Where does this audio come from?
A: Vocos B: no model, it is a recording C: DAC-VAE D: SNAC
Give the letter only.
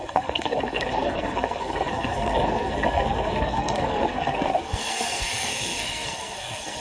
D